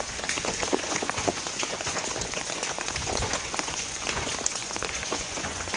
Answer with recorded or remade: remade